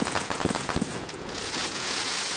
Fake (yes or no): yes